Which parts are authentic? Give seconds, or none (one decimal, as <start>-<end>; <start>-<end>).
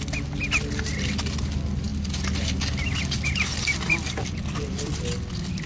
0.0-5.7